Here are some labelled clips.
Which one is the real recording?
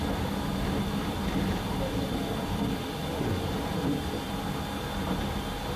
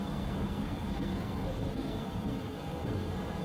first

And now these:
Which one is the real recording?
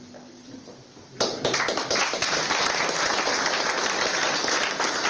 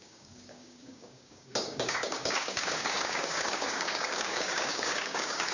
first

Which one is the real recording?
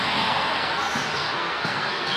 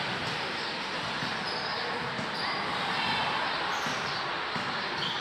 second